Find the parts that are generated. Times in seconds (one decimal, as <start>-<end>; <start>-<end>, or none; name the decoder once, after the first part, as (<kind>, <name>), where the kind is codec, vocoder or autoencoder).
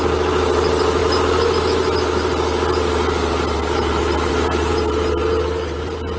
none